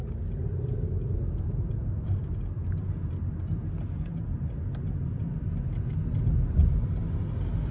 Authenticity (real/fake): real